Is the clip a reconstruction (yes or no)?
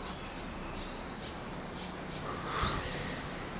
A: no